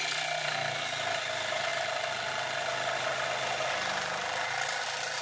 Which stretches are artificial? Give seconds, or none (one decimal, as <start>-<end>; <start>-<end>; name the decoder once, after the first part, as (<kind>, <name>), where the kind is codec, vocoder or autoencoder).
none